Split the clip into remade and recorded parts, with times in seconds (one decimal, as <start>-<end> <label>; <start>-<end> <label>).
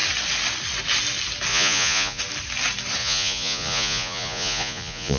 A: 0.0-1.5 recorded; 1.5-2.2 remade; 2.2-3.0 recorded; 3.0-5.2 remade